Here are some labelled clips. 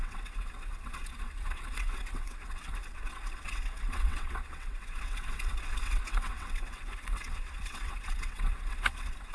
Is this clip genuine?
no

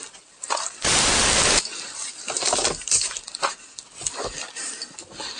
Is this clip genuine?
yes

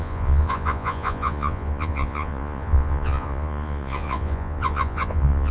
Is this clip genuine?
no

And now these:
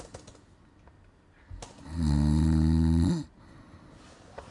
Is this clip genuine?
yes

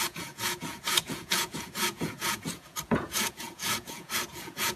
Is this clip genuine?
no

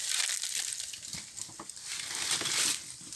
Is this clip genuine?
yes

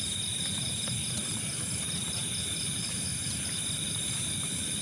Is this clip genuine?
yes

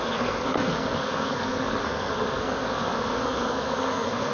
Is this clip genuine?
no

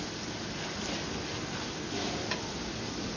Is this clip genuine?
yes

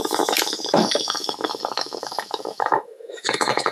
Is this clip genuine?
no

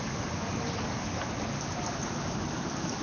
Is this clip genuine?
yes